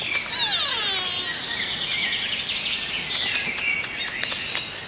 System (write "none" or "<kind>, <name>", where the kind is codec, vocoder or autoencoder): none